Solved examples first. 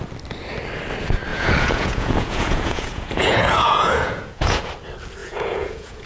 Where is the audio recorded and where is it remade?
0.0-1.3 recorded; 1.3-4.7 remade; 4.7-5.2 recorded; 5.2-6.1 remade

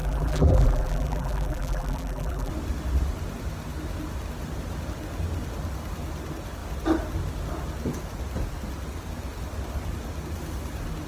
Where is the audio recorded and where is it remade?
0.0-2.5 remade; 2.5-11.1 recorded

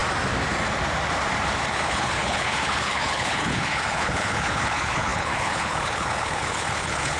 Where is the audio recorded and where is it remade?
0.0-1.7 recorded; 1.7-7.2 remade

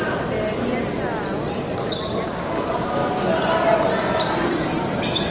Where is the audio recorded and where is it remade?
0.0-5.3 recorded

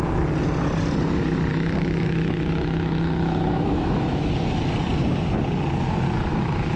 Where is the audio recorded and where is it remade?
0.0-1.5 recorded; 1.5-4.3 remade; 4.3-6.3 recorded; 6.3-6.8 remade

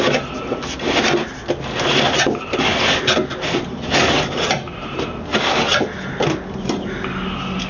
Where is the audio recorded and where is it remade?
0.0-7.7 recorded

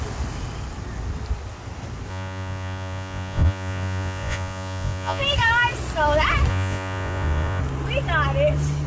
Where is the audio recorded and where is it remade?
0.0-2.1 recorded; 2.1-5.2 remade; 5.2-6.5 recorded; 6.5-7.6 remade; 7.6-8.9 recorded

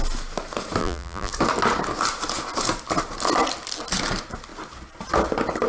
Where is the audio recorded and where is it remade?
0.0-0.8 recorded; 0.8-1.3 remade; 1.3-5.7 recorded